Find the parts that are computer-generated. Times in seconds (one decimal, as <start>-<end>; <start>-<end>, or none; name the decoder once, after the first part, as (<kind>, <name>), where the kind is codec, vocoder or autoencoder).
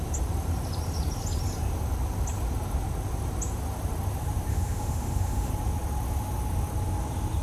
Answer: 4.5-5.5 (autoencoder, DAC-VAE)